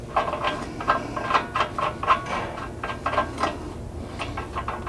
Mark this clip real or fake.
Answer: real